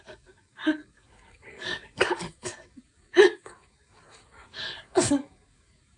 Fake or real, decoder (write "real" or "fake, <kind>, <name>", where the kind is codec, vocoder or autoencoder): fake, codec, DAC